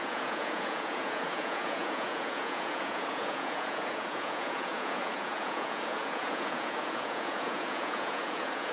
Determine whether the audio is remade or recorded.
remade